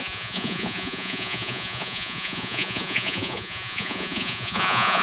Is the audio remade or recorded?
remade